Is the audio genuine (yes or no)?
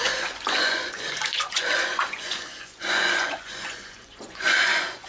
no